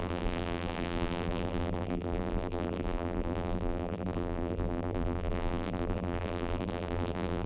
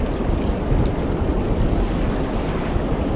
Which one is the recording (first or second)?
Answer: second